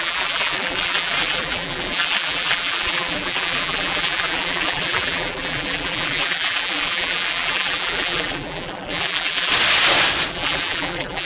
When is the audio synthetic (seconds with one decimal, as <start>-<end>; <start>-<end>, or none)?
0.0-9.5; 10.3-11.3